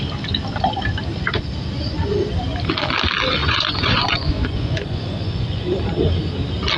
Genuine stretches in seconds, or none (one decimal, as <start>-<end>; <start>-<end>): 0.0-3.4; 5.6-6.8